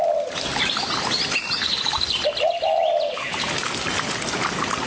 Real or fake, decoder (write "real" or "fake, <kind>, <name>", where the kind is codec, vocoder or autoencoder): real